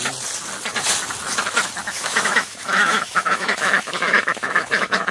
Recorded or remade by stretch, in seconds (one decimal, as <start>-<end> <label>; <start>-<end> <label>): 0.0-1.8 recorded; 1.8-5.1 remade